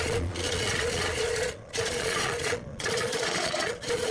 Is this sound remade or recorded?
remade